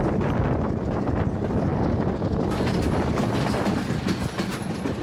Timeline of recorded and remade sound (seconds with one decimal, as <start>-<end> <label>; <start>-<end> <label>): 0.0-5.0 recorded